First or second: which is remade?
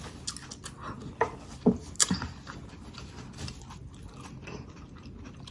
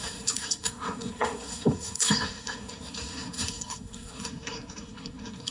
second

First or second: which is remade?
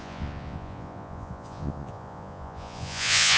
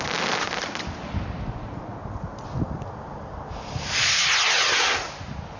first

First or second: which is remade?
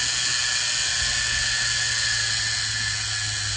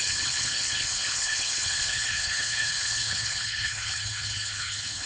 second